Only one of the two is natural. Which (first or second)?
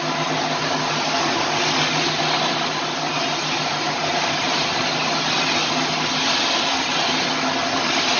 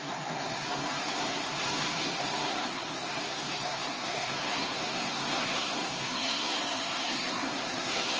first